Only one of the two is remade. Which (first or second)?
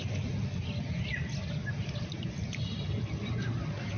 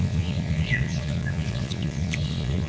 second